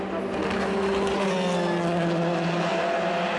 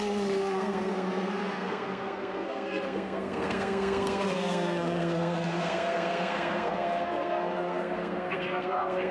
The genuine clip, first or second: first